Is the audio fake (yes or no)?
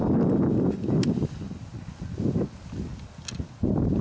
no